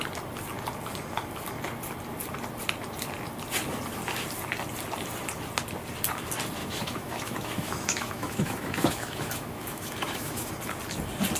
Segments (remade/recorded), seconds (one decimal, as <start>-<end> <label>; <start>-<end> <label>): 0.0-6.6 recorded; 6.6-10.5 remade; 10.5-11.4 recorded

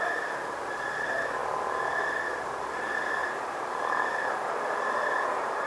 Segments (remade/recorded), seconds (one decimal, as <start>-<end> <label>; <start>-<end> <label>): 0.0-3.2 remade; 3.2-4.2 recorded; 4.2-5.7 remade

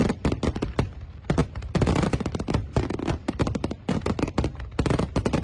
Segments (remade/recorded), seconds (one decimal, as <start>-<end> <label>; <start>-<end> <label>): 0.0-0.6 remade; 0.6-1.4 recorded; 1.4-4.3 remade; 4.3-5.4 recorded

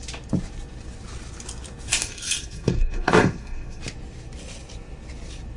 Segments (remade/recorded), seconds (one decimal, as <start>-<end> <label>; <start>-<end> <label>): 0.0-1.9 recorded; 1.9-3.8 remade; 3.8-5.6 recorded

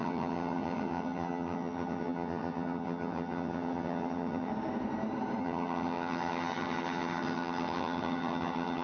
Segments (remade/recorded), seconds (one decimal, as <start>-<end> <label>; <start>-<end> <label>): 0.0-4.5 remade; 4.5-5.4 recorded; 5.4-8.8 remade

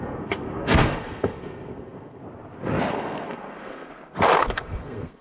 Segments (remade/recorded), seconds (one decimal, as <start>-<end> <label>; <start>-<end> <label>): 0.0-2.2 remade; 2.2-2.9 recorded; 2.9-3.9 remade; 3.9-4.4 recorded; 4.4-5.2 remade